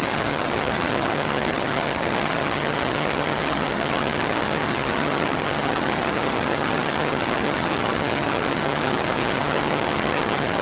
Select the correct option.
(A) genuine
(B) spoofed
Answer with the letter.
B